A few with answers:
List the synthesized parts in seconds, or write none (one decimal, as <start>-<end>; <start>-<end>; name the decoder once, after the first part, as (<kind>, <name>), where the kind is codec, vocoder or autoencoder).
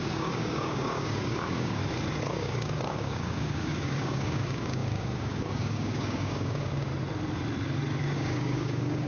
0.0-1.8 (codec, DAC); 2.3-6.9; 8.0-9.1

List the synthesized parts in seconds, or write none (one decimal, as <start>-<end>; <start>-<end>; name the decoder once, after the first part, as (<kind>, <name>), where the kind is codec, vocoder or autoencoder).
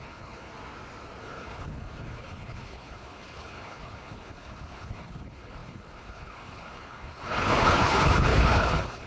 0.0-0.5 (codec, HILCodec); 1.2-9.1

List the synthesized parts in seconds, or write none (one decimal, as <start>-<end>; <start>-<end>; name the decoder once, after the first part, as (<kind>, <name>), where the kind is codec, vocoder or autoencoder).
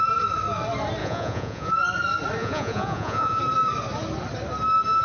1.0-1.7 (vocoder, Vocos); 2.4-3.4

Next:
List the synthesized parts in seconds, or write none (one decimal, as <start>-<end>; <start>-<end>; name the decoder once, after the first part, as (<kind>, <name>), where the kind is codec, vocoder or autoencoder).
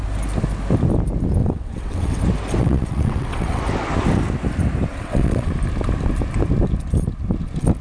1.4-2.2 (vocoder, WaveNeXt); 2.6-3.6; 4.9-5.5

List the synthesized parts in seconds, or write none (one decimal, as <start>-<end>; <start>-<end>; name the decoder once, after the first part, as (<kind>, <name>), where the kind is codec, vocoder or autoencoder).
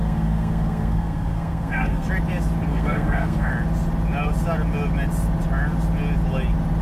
0.0-2.1 (codec, SNAC); 2.7-3.5